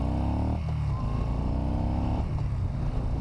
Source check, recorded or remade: recorded